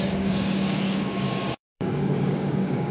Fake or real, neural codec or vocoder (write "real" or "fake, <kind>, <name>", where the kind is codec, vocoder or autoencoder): fake, codec, DAC